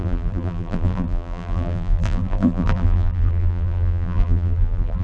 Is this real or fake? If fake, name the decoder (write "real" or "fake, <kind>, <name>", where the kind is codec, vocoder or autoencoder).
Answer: fake, vocoder, BigVGAN v2